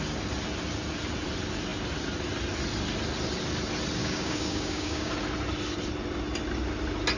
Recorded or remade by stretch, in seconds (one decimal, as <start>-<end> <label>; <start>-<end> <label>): 0.0-4.0 recorded; 4.0-5.1 remade; 5.1-7.2 recorded